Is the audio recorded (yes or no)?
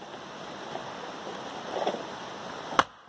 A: yes